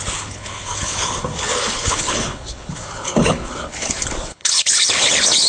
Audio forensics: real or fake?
fake